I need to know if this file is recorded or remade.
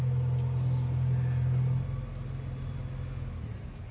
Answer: recorded